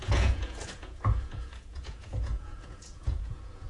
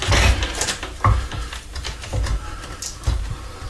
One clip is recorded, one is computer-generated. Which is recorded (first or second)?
second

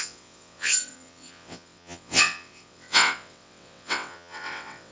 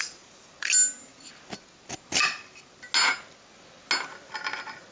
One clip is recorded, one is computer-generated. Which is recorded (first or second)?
second